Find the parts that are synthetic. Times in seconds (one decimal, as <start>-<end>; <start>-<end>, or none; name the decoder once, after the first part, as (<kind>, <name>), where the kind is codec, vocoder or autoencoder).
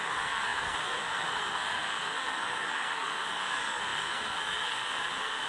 0.0-5.5 (codec, SNAC)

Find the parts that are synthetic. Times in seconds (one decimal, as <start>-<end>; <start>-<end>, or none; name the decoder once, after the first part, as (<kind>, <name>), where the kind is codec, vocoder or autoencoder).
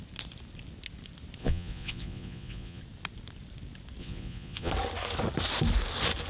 1.4-2.8 (vocoder, Vocos); 4.0-4.7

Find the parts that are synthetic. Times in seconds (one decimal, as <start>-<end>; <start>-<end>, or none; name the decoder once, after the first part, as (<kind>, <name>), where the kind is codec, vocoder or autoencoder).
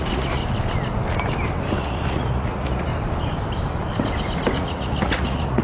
0.0-0.4 (vocoder, Vocos); 1.8-2.9; 4.5-5.6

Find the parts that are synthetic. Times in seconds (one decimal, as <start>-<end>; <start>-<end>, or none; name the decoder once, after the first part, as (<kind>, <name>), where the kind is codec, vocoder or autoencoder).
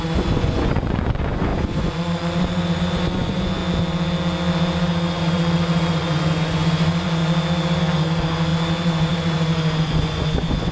0.0-3.6 (vocoder, Vocos); 4.9-7.2; 8.0-10.7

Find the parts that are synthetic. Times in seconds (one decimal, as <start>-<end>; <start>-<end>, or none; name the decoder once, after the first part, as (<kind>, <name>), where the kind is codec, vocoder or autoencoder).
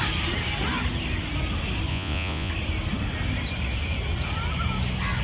1.9-2.5 (vocoder, Vocos)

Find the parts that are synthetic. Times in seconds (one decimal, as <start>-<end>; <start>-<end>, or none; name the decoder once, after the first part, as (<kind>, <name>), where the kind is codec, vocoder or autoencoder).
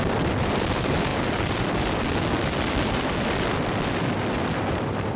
1.1-1.9 (vocoder, BigVGAN v2)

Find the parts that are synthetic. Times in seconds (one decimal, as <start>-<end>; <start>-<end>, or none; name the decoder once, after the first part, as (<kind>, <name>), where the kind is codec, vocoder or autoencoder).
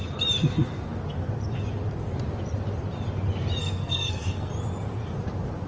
3.6-4.5 (codec, SNAC)